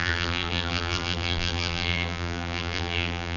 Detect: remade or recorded remade